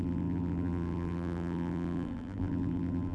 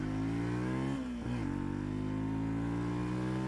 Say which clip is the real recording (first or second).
second